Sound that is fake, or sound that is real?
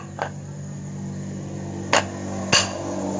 real